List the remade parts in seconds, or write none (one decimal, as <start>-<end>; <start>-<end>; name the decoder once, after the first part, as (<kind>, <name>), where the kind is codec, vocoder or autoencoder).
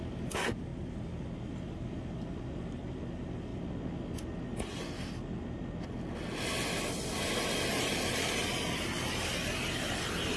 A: none